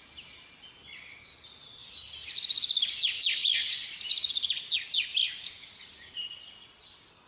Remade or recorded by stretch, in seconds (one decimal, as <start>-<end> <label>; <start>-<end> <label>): 0.0-7.3 recorded